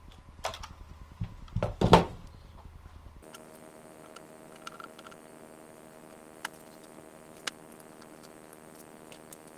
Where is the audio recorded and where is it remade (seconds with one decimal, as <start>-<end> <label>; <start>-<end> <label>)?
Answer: 0.0-9.6 recorded